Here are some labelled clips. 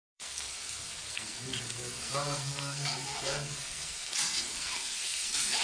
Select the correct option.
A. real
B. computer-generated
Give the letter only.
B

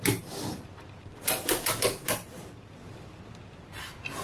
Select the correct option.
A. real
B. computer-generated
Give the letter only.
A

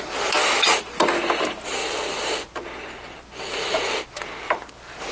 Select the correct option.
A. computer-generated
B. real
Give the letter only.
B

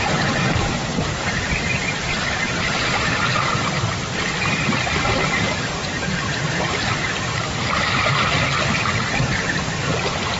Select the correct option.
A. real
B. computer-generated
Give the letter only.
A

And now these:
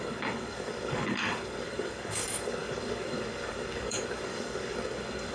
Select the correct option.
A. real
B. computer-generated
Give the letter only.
B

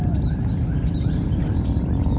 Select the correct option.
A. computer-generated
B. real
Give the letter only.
B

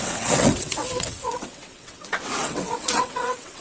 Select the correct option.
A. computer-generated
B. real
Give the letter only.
A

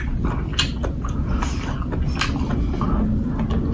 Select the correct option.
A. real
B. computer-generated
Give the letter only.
A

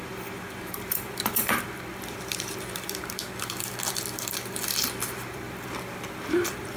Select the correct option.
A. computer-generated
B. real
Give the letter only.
A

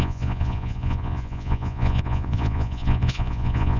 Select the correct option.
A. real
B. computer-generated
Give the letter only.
B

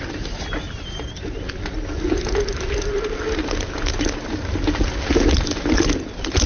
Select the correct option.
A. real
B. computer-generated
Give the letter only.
A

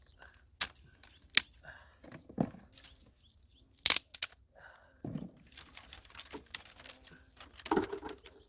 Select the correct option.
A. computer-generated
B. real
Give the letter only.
B